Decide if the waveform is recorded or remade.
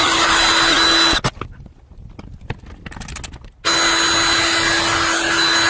recorded